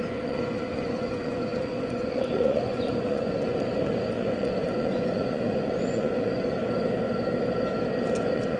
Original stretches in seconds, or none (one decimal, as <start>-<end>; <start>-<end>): 6.6-8.2